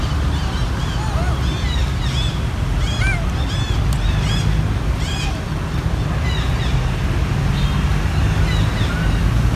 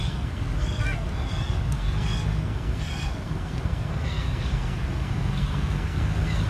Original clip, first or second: first